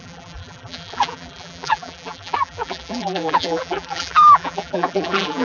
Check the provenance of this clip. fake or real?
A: fake